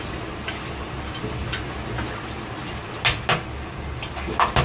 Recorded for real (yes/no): yes